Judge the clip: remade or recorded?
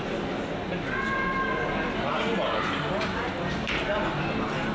recorded